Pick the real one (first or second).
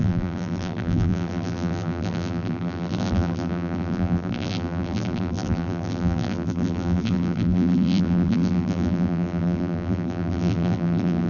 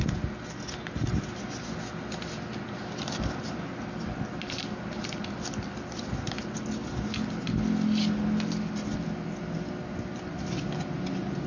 second